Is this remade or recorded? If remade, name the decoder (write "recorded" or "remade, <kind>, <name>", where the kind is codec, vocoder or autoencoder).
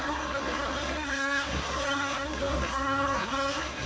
remade, codec, SNAC